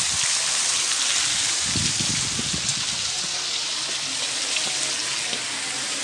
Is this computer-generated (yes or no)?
no